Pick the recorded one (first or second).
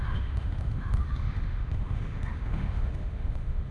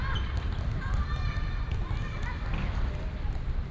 second